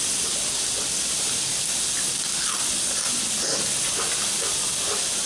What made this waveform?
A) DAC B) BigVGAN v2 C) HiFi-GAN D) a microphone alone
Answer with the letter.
D